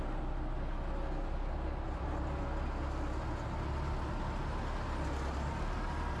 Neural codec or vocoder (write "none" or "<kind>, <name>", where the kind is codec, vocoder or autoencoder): none